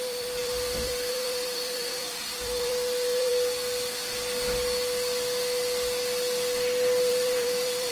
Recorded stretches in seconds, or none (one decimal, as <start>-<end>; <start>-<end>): 3.3-7.1